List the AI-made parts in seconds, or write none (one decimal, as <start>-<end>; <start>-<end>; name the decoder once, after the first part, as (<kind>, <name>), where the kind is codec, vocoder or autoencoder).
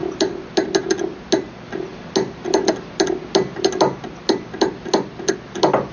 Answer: none